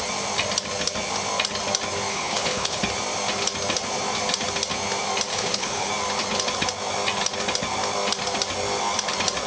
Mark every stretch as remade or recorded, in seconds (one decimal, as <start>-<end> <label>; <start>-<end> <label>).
0.0-2.1 recorded; 2.1-2.8 remade; 2.8-5.3 recorded; 5.3-5.9 remade; 5.9-9.5 recorded